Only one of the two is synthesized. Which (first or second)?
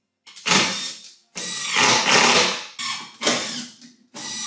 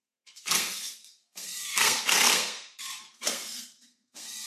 second